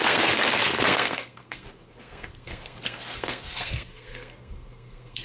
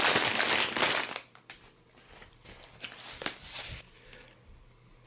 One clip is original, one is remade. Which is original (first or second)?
second